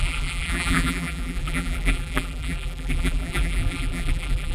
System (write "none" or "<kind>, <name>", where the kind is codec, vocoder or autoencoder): vocoder, BigVGAN v2